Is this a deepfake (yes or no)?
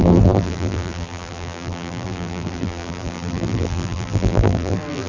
yes